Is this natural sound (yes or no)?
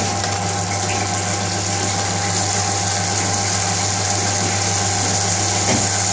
yes